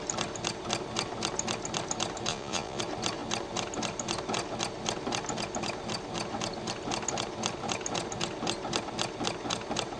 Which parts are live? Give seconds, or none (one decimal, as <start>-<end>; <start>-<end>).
0.0-2.3; 2.8-10.0